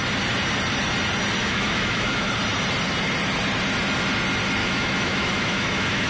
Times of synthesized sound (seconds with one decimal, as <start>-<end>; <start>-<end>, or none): 1.4-2.3; 4.6-6.1